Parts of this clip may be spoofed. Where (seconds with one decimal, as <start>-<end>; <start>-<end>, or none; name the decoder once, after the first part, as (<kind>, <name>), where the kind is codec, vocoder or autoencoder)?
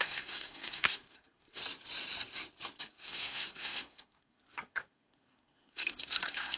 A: 0.0-1.6 (codec, SNAC); 2.8-6.6